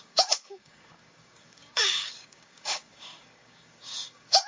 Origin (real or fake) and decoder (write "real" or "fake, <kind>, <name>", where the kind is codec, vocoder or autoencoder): fake, codec, DAC